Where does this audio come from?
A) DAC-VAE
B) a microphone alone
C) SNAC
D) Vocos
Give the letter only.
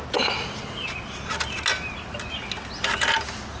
B